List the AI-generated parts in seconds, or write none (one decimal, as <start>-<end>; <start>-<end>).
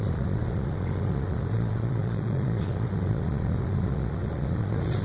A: 0.0-5.0